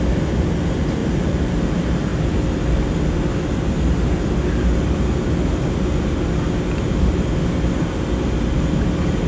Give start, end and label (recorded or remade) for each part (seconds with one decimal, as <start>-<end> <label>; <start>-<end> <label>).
0.0-1.0 recorded; 1.0-1.6 remade; 1.6-9.3 recorded